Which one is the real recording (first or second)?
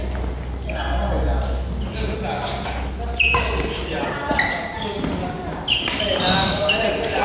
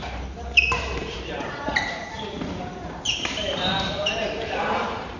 first